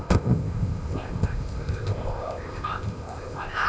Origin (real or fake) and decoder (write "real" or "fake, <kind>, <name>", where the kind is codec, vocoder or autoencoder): fake, codec, ZipCodec